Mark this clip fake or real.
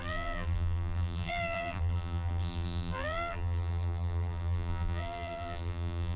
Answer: fake